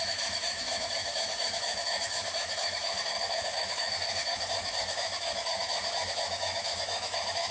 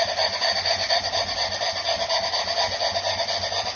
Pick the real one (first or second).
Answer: second